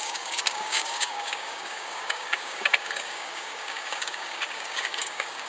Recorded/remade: remade